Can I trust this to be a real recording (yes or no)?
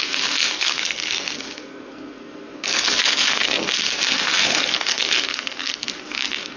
no